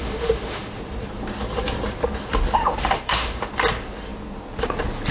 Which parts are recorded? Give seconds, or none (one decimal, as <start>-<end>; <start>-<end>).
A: 0.8-2.6; 3.5-5.1

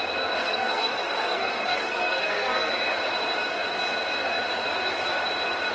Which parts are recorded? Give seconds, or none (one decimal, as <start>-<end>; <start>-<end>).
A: 0.0-0.4; 2.7-5.7